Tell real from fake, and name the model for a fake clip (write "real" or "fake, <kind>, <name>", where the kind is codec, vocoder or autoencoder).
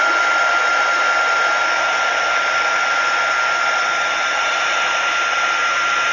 real